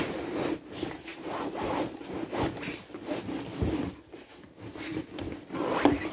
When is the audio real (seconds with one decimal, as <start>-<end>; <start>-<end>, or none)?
0.0-6.1